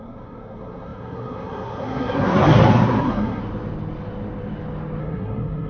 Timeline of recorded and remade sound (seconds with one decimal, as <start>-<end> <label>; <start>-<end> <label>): 0.0-3.4 remade; 3.4-5.0 recorded; 5.0-5.7 remade